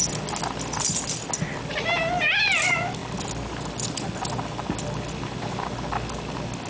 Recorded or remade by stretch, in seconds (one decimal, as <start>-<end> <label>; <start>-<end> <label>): 0.0-6.7 recorded